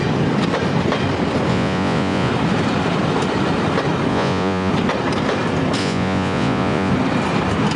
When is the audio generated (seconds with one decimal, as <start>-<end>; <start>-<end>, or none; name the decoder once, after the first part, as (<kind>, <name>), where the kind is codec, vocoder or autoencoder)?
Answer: 1.5-2.3 (vocoder, Vocos); 4.1-4.7; 5.8-6.9